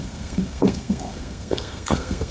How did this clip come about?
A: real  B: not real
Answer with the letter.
B